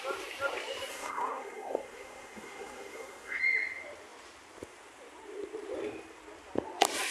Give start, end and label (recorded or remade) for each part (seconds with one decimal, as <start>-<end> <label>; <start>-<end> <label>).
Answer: 0.0-0.9 recorded; 0.9-3.4 remade; 3.4-7.1 recorded